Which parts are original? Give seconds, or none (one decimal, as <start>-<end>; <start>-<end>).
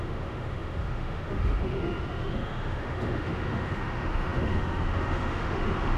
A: none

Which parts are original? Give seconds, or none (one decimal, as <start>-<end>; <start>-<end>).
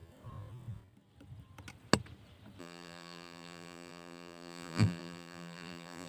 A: 0.0-2.6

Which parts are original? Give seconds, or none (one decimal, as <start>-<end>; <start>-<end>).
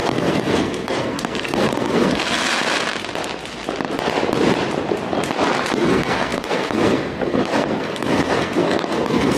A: 2.5-5.7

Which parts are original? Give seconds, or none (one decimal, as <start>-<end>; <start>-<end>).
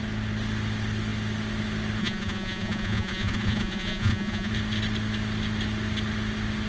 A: 0.0-2.0; 4.5-6.7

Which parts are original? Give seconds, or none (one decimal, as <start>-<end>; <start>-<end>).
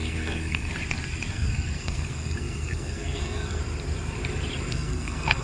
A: 0.7-1.3; 3.6-4.7